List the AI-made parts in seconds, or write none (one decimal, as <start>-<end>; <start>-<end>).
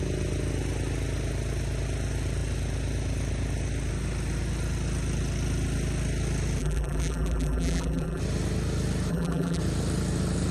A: 6.6-8.2; 9.1-9.6